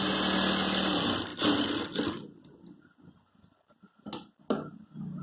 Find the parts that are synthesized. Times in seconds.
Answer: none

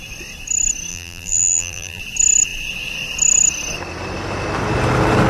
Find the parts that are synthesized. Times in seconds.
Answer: 0.9-2.0 (vocoder, BigVGAN v2)

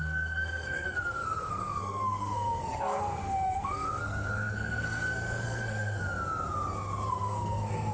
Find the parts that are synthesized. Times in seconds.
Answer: 0.0-6.0 (codec, SNAC); 7.1-7.9